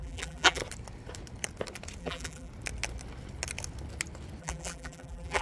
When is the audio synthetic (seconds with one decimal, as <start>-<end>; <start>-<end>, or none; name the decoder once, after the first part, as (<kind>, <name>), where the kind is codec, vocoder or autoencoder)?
0.0-0.6 (vocoder, BigVGAN v2); 2.0-2.5; 4.4-5.4